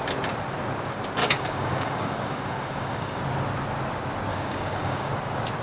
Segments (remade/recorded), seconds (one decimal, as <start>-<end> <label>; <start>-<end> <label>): 0.0-1.2 recorded; 1.2-3.2 remade; 3.2-4.3 recorded; 4.3-5.1 remade; 5.1-5.6 recorded